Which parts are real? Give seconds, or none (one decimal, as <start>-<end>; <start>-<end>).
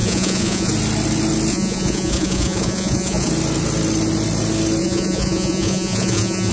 0.7-1.5; 3.3-4.8